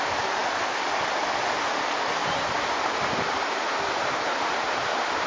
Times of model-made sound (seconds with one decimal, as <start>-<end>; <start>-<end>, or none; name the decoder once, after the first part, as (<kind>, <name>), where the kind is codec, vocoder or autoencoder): 2.2-5.3 (vocoder, BigVGAN v2)